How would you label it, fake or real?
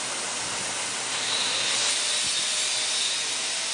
real